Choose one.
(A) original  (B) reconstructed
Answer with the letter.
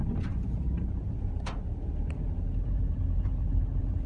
B